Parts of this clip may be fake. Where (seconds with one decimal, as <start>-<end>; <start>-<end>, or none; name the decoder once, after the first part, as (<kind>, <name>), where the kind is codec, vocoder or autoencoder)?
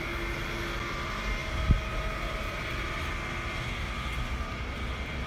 none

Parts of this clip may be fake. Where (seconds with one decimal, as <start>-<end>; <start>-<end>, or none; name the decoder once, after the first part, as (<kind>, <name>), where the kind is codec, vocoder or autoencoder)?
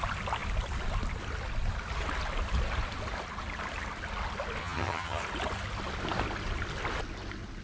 4.6-5.2 (vocoder, HiFi-GAN)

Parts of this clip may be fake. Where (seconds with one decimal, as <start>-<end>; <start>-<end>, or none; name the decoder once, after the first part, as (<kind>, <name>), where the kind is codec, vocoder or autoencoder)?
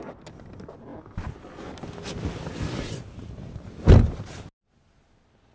none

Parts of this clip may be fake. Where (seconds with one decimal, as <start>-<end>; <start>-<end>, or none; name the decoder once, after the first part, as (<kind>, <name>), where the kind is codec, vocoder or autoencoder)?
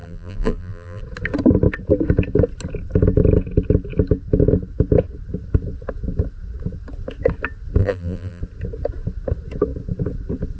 0.0-1.0 (vocoder, BigVGAN v2); 7.8-8.4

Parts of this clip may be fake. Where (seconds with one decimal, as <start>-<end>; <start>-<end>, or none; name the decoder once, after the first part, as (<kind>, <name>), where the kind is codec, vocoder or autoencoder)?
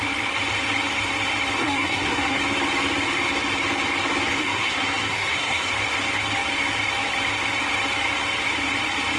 1.6-2.4 (codec, SNAC); 4.4-5.7